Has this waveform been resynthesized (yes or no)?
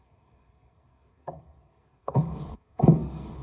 yes